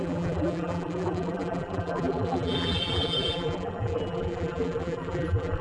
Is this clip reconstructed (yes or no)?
yes